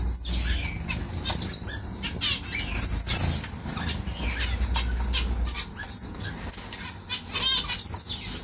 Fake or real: real